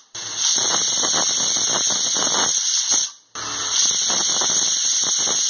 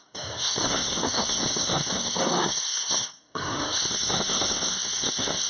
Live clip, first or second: first